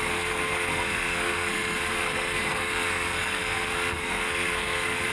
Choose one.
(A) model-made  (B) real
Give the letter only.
A